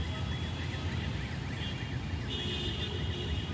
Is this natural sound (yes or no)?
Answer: yes